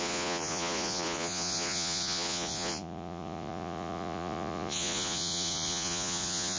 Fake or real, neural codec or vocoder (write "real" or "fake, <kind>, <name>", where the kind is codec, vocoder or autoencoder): fake, vocoder, Vocos